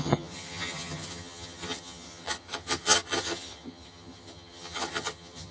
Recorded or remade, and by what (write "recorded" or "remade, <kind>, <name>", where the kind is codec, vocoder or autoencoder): remade, vocoder, HiFi-GAN